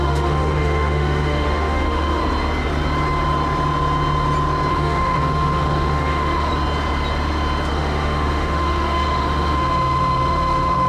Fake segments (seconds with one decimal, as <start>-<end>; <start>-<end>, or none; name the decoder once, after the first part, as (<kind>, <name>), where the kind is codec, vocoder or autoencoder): 0.0-2.2 (autoencoder, DAC-VAE); 4.7-6.5; 7.7-10.9